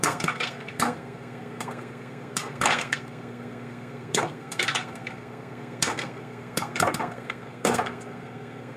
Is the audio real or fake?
fake